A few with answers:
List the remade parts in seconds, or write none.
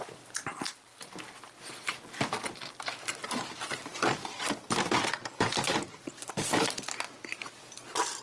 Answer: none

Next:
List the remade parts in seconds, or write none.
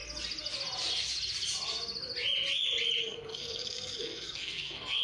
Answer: 3.0-5.0 (codec, SNAC)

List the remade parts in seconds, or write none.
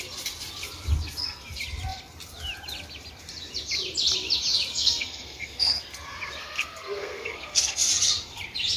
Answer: 4.7-5.8 (codec, SNAC); 6.4-7.9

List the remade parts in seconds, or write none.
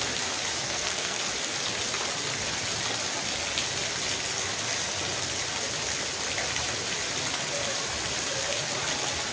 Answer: 0.6-1.2 (codec, SNAC)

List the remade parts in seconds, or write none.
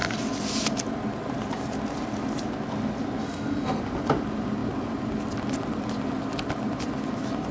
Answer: 3.2-3.8 (codec, SNAC)